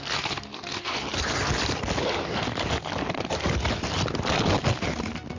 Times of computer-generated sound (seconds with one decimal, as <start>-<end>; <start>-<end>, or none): none